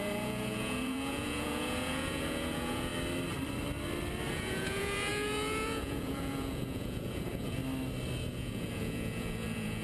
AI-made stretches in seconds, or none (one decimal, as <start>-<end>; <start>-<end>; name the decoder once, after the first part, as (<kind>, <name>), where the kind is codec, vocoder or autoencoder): 0.0-2.9 (vocoder, Vocos); 4.3-7.6; 8.3-9.8